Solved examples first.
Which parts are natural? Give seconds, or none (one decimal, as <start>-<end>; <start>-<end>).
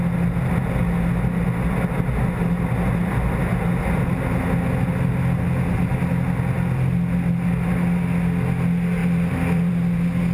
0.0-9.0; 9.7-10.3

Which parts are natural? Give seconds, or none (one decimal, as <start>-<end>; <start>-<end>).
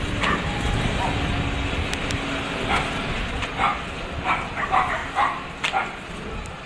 0.0-6.7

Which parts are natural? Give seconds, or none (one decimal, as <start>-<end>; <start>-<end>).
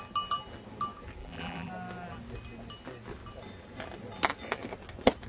0.0-1.2; 1.7-5.3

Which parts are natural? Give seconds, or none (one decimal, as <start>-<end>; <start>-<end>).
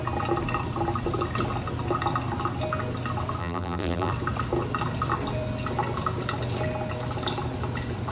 0.0-3.4; 4.1-8.1